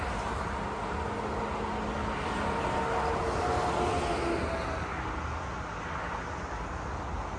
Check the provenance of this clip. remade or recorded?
recorded